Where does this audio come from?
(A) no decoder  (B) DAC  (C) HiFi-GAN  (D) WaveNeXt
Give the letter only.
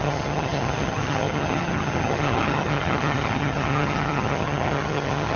C